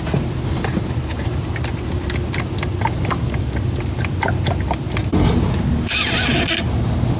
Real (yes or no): yes